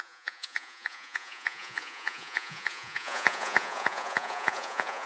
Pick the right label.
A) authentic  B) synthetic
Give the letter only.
B